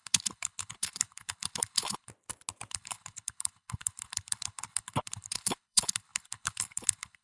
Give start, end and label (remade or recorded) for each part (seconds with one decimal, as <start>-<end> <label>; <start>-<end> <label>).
0.0-2.1 remade; 2.1-2.7 recorded; 2.7-7.2 remade